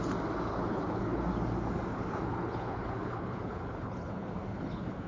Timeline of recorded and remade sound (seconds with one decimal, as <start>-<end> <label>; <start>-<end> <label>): 0.0-0.5 recorded; 0.5-1.2 remade; 1.2-1.9 recorded; 1.9-5.1 remade